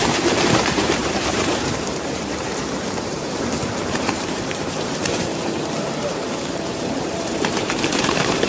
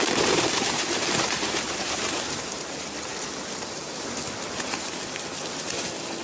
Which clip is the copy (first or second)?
first